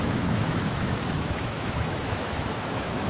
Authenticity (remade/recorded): remade